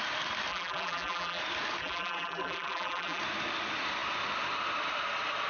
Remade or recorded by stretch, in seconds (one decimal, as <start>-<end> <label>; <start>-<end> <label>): 0.0-0.5 recorded; 0.5-1.4 remade; 1.4-1.8 recorded; 1.8-3.2 remade; 3.2-5.5 recorded